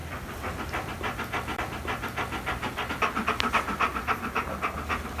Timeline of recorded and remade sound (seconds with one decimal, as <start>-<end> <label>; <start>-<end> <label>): 0.0-2.9 remade; 2.9-3.9 recorded; 3.9-4.5 remade; 4.5-5.2 recorded